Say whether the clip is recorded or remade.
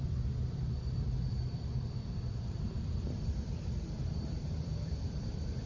remade